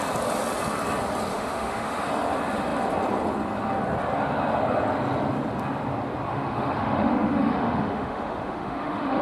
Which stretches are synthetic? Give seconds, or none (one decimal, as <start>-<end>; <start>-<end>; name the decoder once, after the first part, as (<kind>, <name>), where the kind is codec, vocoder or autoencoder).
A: 1.3-2.1 (autoencoder, DAC-VAE); 6.3-9.2